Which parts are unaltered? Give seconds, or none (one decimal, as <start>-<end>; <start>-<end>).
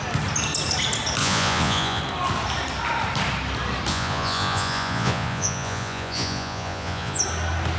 0.0-1.2; 2.0-3.9; 7.2-7.8